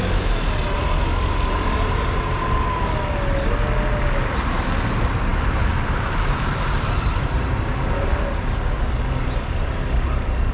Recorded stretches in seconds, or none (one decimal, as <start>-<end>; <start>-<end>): 0.0-10.5